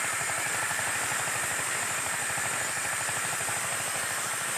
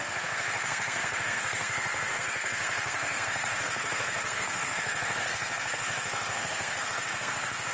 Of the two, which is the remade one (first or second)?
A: second